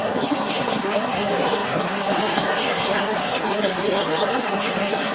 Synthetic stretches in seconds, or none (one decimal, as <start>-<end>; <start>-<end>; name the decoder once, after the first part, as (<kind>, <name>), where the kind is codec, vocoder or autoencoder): 0.0-5.1 (codec, SNAC)